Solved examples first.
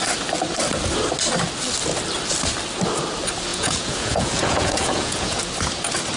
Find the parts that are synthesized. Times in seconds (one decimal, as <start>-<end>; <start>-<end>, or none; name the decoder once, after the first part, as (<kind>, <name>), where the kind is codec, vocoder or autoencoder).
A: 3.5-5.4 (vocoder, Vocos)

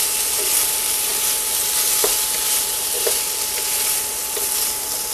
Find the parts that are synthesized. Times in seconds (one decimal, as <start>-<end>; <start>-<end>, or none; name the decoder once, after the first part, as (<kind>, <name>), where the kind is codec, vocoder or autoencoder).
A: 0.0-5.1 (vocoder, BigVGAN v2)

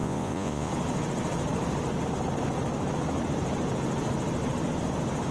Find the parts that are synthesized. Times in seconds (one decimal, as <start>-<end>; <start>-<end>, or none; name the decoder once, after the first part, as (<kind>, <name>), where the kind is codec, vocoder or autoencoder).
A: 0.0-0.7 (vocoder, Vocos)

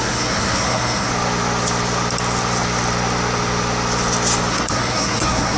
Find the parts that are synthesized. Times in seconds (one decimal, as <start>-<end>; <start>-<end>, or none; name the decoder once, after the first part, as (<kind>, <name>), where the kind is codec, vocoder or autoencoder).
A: 0.0-1.1 (codec, SNAC); 4.5-5.6

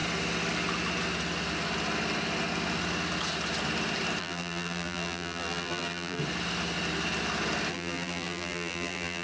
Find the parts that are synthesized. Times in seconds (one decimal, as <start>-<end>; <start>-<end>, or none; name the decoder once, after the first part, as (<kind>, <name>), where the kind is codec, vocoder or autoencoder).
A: 4.2-6.2 (vocoder, BigVGAN v2); 7.7-9.2

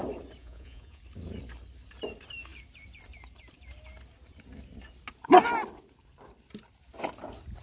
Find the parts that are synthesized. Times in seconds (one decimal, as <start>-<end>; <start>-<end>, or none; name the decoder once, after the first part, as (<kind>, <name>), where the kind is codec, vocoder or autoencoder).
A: 0.4-1.0 (vocoder, Vocos)